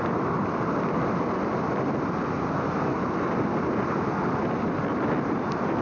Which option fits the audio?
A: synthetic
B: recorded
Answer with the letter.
B